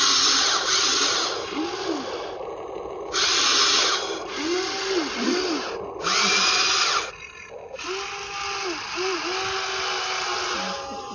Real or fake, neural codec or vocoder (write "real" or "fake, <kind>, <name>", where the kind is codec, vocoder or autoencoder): real